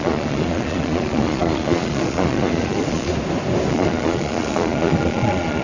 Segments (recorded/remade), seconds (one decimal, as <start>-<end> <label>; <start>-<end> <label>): 0.0-3.1 remade; 3.1-3.7 recorded; 3.7-5.6 remade